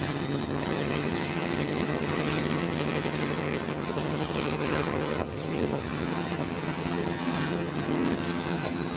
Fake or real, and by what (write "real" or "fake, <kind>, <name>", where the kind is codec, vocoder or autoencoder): fake, vocoder, HiFi-GAN